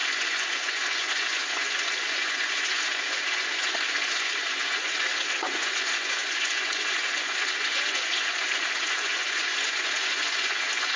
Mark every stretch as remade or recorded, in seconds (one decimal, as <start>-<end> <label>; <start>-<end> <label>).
0.0-11.0 remade